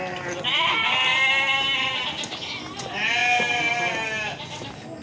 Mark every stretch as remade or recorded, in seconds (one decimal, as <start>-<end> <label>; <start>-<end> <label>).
0.0-5.0 recorded